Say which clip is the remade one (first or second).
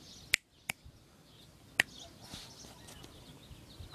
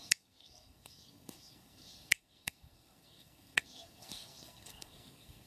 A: second